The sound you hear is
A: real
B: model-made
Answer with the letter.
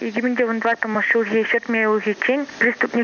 A